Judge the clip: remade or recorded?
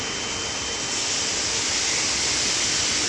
recorded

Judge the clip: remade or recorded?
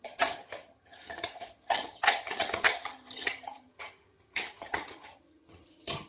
remade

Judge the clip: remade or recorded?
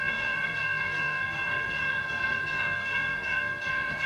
remade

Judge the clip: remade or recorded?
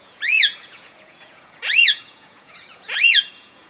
remade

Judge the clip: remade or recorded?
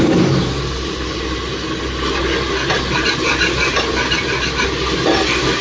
recorded